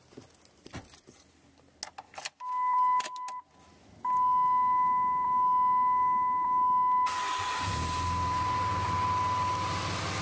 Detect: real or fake real